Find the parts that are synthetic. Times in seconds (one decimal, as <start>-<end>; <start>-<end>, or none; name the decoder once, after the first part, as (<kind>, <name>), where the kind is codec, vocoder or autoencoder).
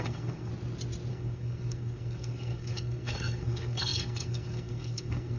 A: 0.0-0.5 (codec, SNAC); 1.1-5.4